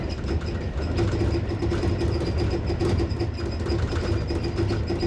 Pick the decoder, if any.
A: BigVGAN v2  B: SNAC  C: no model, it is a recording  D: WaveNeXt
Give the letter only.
C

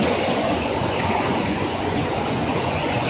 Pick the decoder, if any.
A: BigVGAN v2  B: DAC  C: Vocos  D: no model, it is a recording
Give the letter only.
C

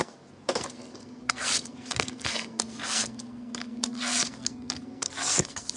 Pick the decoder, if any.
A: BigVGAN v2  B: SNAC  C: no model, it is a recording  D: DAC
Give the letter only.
B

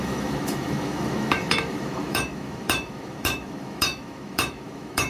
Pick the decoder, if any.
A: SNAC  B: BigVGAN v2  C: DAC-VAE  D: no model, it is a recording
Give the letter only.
C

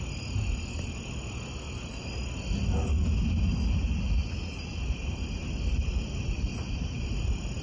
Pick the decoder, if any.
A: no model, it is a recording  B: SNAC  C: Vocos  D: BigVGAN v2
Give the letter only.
A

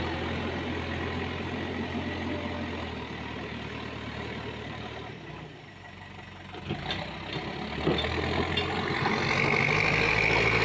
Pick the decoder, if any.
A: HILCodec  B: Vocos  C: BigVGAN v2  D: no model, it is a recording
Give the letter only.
D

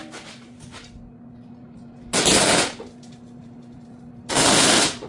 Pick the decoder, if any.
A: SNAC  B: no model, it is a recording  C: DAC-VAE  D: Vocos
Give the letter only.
B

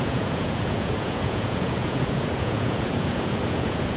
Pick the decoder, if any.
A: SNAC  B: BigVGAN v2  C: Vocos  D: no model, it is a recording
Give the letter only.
C